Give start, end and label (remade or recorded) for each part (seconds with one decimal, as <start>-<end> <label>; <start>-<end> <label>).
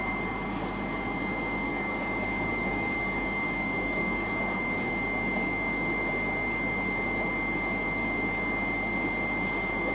0.0-1.7 recorded; 1.7-4.9 remade; 4.9-9.9 recorded